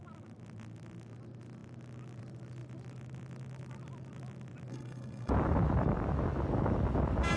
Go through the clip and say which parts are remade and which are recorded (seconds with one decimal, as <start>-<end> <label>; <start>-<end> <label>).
0.0-4.7 recorded; 4.7-5.3 remade; 5.3-7.4 recorded